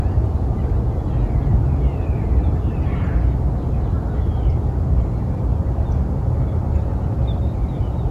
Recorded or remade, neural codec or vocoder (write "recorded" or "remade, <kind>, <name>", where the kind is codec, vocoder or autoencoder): recorded